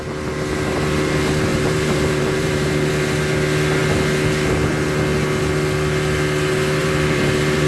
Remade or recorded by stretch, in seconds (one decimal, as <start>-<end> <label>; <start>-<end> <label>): 0.0-1.5 recorded; 1.5-2.9 remade; 2.9-6.8 recorded; 6.8-7.7 remade